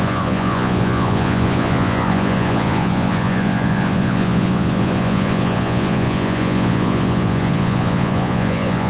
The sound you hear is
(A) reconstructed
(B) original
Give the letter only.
A